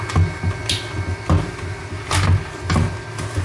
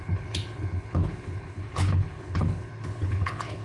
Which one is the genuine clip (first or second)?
first